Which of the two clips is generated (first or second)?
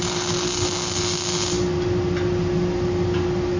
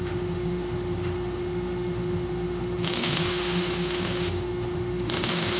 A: second